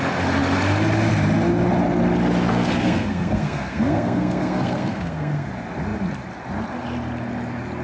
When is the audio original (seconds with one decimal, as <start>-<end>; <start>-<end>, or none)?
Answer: 0.0-2.5; 5.5-7.8